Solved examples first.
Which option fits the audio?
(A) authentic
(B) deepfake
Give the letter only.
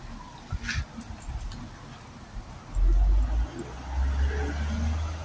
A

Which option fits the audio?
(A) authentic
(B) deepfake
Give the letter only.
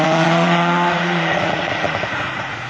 B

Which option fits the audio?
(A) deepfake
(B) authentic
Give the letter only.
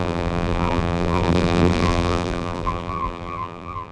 A